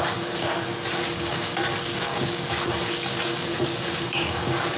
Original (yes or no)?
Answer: no